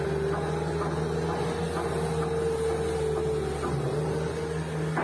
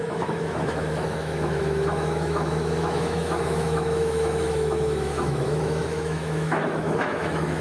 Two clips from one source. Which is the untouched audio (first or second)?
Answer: first